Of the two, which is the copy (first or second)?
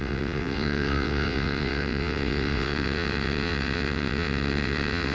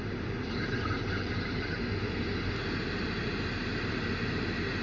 first